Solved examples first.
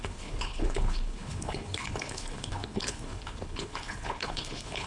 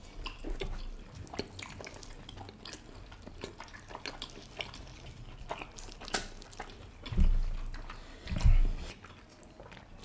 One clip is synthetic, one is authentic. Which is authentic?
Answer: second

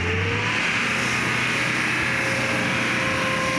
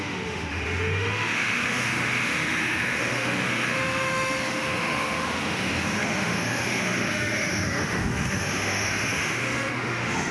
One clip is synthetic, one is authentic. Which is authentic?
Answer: first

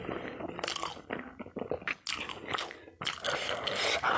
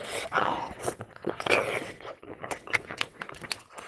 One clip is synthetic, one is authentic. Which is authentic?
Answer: first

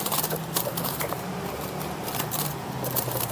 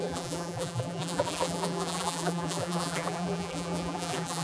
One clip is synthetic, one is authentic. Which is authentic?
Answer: first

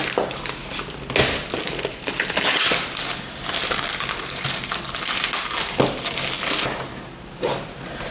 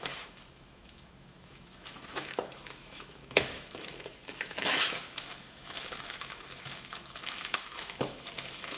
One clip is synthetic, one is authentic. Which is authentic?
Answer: first